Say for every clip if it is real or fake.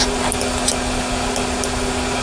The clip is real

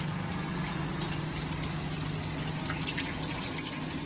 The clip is real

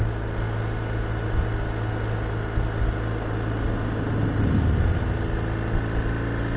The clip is real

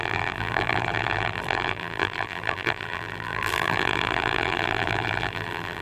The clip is fake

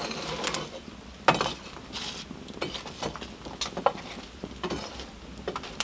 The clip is real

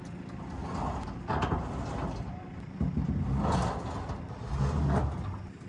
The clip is real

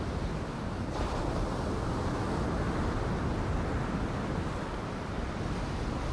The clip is real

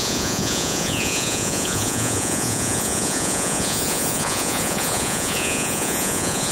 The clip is fake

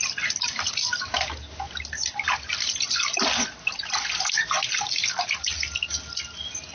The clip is real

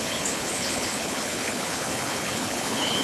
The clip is fake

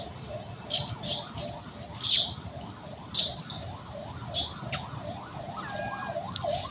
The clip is real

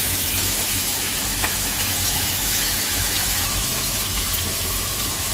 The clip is fake